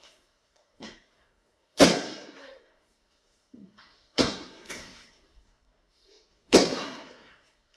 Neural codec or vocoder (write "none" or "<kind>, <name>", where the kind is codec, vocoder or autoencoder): codec, SNAC